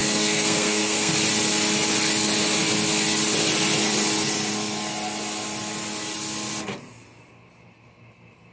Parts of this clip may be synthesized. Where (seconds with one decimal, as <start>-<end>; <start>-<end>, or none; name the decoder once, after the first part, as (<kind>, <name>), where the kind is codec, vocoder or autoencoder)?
0.0-1.1 (codec, SNAC)